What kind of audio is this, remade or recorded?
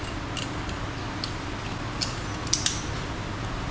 recorded